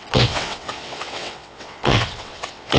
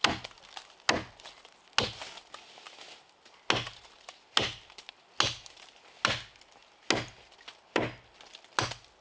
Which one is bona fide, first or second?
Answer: second